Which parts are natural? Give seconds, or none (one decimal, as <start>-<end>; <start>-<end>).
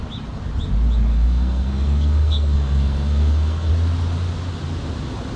0.0-1.1; 3.7-5.4